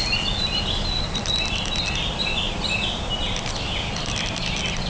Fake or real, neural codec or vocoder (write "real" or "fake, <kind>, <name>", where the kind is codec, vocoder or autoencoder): real